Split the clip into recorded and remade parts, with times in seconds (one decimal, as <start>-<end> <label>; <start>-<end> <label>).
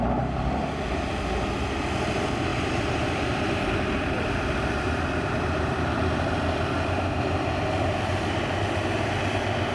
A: 0.0-2.5 recorded; 2.5-6.0 remade; 6.0-9.7 recorded